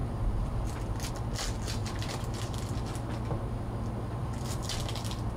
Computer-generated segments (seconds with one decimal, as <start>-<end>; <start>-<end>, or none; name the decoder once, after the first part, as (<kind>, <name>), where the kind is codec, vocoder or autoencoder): 0.0-1.1 (vocoder, BigVGAN v2); 1.8-2.9; 4.2-4.8